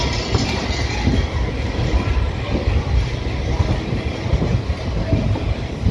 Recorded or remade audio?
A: recorded